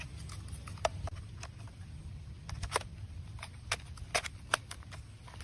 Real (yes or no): yes